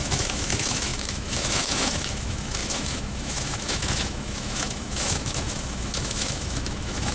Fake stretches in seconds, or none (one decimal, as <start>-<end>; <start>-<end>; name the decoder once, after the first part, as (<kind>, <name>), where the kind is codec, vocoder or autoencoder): 0.0-7.1 (autoencoder, DAC-VAE)